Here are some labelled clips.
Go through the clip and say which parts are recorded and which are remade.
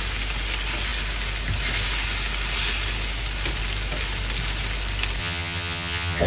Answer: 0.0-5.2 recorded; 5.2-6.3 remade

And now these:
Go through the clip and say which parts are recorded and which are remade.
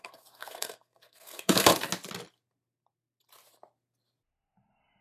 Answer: 0.0-1.7 remade; 1.7-5.0 recorded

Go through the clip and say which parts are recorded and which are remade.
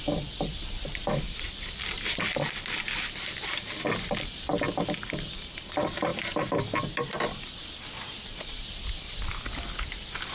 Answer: 0.0-10.3 recorded